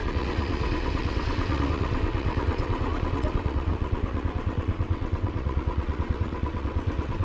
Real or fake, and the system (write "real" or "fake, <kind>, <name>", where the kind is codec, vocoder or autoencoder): fake, vocoder, WaveNeXt